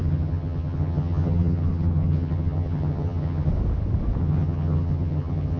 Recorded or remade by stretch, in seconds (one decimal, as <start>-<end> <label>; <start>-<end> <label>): 0.0-3.5 remade; 3.5-4.2 recorded; 4.2-5.6 remade